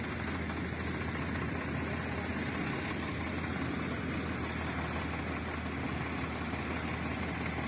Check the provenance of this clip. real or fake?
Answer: real